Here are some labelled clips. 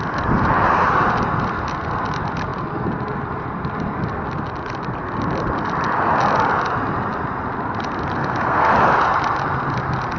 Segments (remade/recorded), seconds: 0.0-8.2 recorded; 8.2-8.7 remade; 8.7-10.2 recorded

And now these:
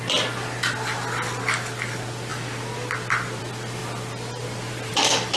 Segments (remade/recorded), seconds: 0.0-5.4 recorded

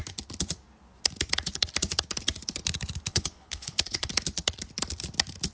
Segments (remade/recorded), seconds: 0.0-3.1 recorded; 3.1-4.1 remade; 4.1-5.5 recorded

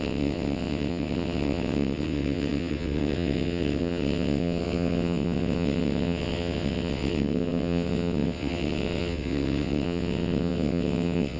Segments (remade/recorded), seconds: 0.0-11.4 remade

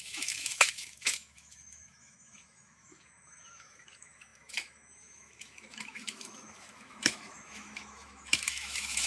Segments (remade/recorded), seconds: 0.0-9.1 remade